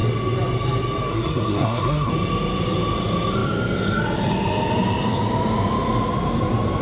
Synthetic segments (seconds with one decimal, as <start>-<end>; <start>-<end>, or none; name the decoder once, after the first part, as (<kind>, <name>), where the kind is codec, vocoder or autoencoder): 1.1-2.1 (codec, SNAC)